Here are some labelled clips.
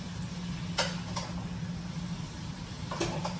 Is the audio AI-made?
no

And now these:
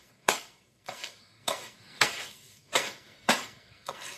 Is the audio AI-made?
yes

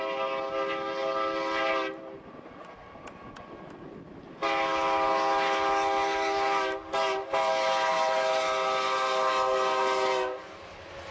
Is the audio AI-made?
no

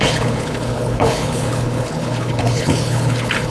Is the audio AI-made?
yes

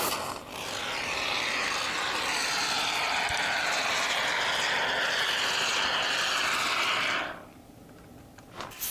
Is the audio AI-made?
yes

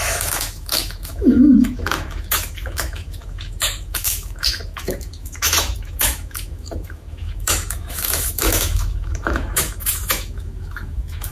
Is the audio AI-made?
yes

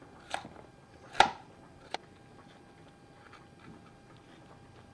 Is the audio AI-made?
no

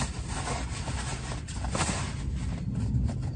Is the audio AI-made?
no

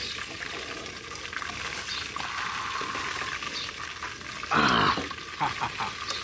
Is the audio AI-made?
no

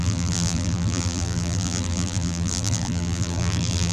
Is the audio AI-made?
yes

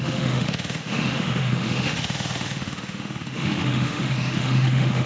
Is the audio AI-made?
yes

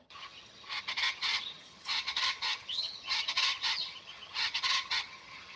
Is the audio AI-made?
yes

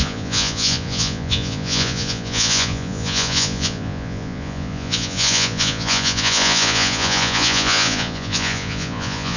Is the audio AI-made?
yes